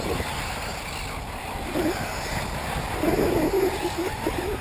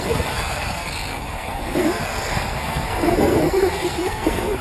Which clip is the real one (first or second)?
first